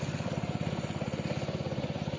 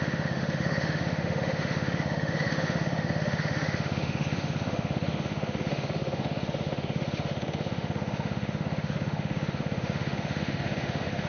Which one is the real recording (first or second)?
first